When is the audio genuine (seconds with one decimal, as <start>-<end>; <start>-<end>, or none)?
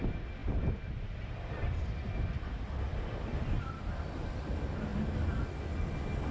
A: 0.0-6.3